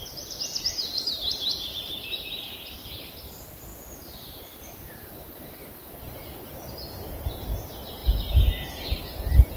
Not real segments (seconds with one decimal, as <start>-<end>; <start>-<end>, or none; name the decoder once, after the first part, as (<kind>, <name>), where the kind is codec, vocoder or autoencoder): none